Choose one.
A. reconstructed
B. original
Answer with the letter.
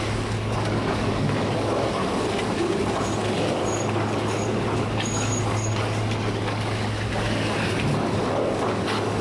A